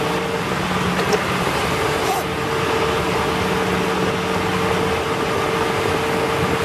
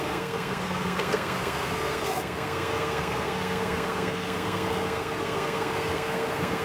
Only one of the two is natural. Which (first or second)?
first